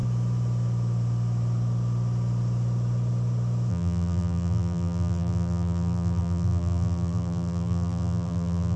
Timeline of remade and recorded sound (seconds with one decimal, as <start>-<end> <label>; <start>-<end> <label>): 0.0-3.7 recorded; 3.7-8.8 remade